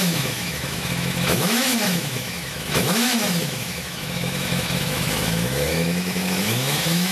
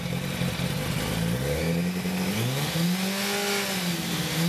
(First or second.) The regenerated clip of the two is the first